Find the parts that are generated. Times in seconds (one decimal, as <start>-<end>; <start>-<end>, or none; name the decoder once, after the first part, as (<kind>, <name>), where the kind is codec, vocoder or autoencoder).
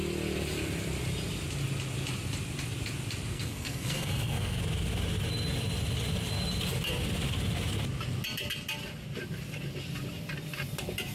3.3-4.6 (codec, SNAC)